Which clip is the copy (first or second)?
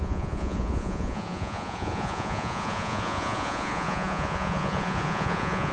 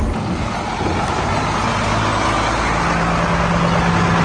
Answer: first